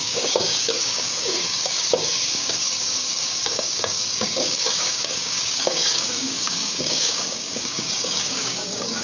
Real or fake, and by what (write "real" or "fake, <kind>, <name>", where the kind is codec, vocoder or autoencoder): fake, codec, DAC